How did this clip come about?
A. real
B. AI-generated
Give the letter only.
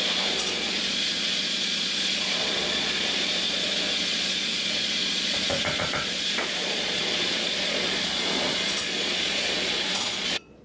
B